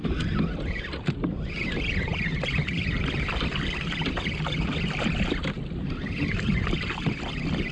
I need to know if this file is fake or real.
fake